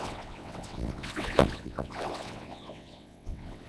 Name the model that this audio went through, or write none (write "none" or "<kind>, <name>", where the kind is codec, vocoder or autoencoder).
vocoder, WaveNeXt